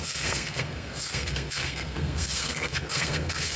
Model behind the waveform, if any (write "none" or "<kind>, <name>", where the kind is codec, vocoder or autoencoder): codec, SNAC